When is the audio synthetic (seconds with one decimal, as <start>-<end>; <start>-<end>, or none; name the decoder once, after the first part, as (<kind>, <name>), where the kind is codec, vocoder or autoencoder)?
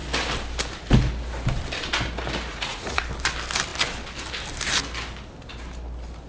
2.5-3.0 (vocoder, Vocos)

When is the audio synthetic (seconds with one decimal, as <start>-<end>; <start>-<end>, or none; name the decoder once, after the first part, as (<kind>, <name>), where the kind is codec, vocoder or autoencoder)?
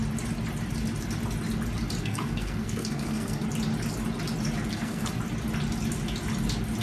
2.0-3.4 (codec, SNAC); 4.7-5.2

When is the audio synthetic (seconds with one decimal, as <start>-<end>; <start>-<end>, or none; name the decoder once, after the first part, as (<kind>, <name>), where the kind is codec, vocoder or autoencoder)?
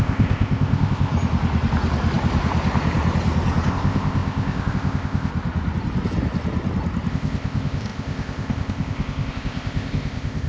0.0-1.1 (codec, ZipCodec); 3.7-5.3; 7.1-10.5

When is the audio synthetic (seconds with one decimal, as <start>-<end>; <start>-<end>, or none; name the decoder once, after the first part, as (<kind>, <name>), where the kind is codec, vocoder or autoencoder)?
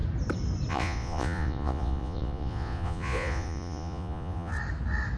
0.7-4.5 (vocoder, Vocos)